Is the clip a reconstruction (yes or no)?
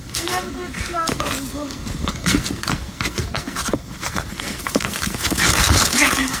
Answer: yes